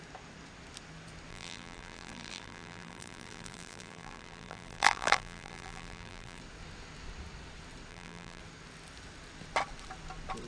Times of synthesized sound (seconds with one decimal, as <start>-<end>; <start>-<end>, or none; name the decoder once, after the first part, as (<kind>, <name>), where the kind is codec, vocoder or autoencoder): 1.3-6.4 (vocoder, BigVGAN v2); 7.9-8.4